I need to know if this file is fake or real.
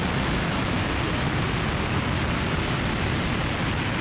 real